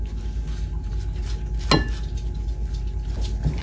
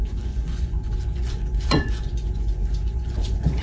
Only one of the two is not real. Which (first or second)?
second